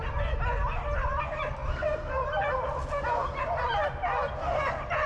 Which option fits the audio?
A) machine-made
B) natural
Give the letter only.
B